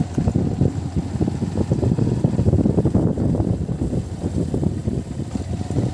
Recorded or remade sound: recorded